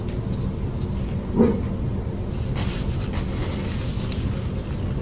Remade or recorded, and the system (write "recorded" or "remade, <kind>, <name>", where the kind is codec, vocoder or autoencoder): recorded